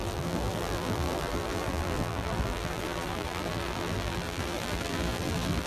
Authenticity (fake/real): fake